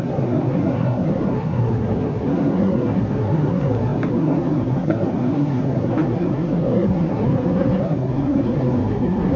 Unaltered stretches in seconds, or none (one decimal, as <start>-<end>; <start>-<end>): none